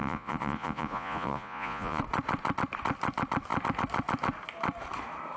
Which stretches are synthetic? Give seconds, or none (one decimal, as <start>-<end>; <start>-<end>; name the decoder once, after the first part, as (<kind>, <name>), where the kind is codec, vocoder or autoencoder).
0.0-2.0 (vocoder, Vocos)